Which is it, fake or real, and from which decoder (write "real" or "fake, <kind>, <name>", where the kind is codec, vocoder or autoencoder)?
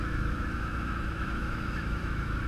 fake, autoencoder, DAC-VAE